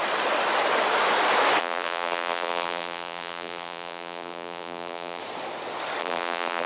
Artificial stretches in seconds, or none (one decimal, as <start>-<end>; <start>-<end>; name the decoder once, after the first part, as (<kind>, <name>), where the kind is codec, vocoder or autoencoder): 1.6-5.2 (vocoder, BigVGAN v2); 6.0-6.7